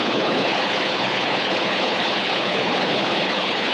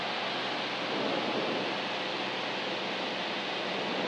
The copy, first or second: first